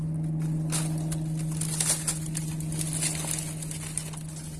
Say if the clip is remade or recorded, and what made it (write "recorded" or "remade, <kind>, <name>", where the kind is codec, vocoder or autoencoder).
recorded